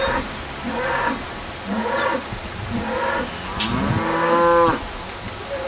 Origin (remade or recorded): recorded